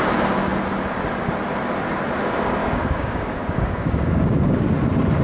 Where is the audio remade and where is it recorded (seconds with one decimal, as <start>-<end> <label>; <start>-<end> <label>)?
0.0-2.6 recorded; 2.6-4.6 remade; 4.6-5.2 recorded